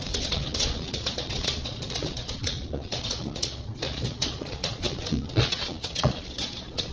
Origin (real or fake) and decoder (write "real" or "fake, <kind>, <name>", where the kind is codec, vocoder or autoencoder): fake, vocoder, Vocos